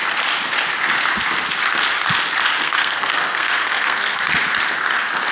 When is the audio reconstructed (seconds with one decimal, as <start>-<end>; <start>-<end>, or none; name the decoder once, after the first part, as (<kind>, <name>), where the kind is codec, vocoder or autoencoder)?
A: 2.6-4.2 (codec, SNAC)